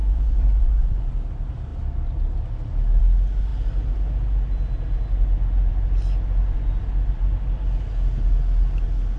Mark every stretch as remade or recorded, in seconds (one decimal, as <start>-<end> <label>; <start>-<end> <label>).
0.0-1.1 remade; 1.1-9.2 recorded